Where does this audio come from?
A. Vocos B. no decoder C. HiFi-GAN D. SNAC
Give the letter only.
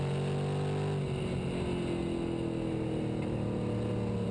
B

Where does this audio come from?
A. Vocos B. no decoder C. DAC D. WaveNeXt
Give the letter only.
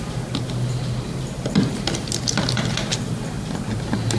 B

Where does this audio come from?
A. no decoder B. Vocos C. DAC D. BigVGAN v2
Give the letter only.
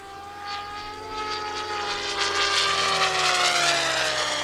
A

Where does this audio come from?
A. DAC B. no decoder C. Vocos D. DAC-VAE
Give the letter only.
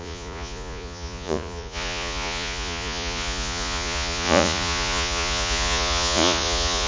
C